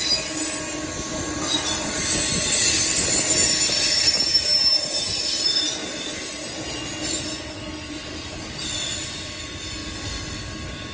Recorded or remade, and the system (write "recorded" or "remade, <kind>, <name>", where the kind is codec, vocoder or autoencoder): recorded